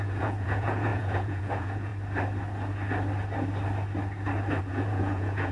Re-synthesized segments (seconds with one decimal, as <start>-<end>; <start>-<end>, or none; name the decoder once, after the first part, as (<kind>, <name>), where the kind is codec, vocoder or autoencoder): 0.0-1.9 (vocoder, Vocos); 4.6-5.5